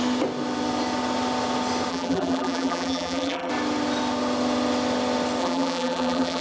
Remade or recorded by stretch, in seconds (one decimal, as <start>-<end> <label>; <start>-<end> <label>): 0.0-1.9 recorded; 1.9-3.5 remade; 3.5-5.4 recorded; 5.4-6.4 remade